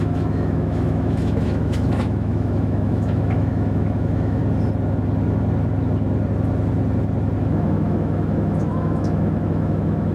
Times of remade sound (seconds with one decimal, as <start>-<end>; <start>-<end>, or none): 0.0-4.4; 7.4-10.1